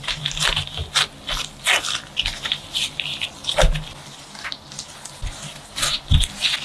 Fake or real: real